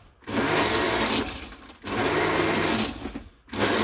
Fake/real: real